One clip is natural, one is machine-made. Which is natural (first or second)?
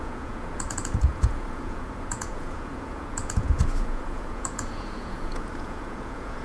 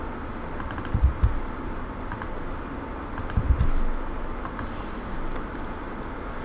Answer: second